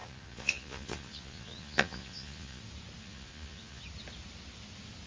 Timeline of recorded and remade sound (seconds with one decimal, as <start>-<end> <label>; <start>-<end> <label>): 0.0-2.6 remade; 2.6-3.0 recorded; 3.0-3.8 remade; 3.8-5.1 recorded